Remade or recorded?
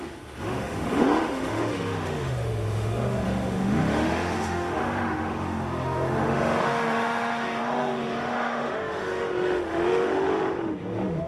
remade